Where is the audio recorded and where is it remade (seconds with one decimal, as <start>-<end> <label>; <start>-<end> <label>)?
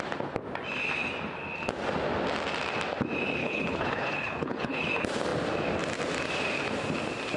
0.0-3.4 recorded; 3.4-4.8 remade; 4.8-7.4 recorded